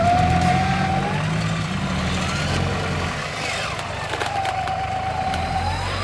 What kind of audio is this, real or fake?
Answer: real